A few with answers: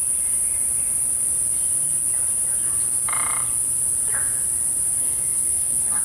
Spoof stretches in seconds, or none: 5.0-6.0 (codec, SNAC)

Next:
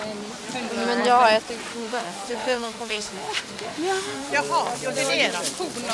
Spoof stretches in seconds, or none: 1.7-4.3 (autoencoder, DAC-VAE)

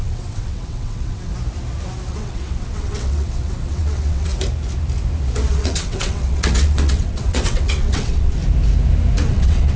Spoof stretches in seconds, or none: 0.0-1.3 (vocoder, WaveNeXt); 2.1-4.3; 5.5-8.4; 9.3-9.8

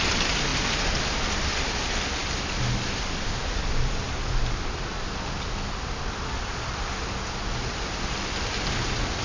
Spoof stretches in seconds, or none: none

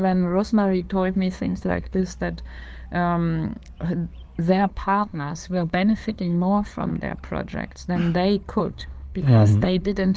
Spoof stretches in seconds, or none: 0.0-2.0 (codec, SNAC); 4.5-6.9; 8.6-10.2

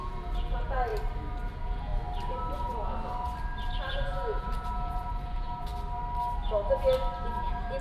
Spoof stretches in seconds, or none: 0.0-0.9 (vocoder, Vocos); 1.5-1.9; 3.9-5.7; 7.3-7.8

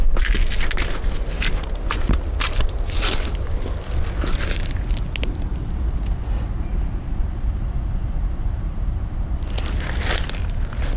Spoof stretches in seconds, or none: none